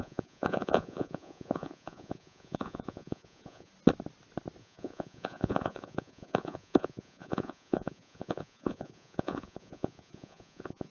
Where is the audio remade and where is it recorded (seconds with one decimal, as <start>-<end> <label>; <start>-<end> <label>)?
0.0-3.7 remade; 3.7-4.6 recorded; 4.6-10.9 remade